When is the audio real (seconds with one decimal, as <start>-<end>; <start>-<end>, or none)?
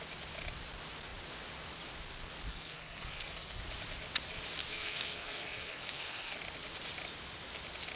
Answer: 0.0-2.5; 3.6-4.7; 6.4-8.0